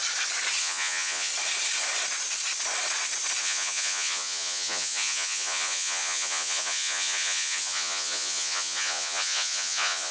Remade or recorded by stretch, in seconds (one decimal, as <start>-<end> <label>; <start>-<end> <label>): 0.0-0.6 recorded; 0.6-1.3 remade; 1.3-3.4 recorded; 3.4-10.1 remade